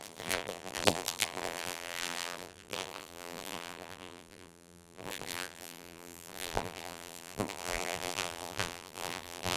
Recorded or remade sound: remade